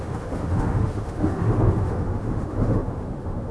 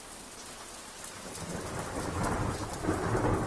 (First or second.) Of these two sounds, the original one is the second